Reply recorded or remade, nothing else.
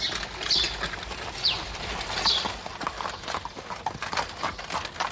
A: recorded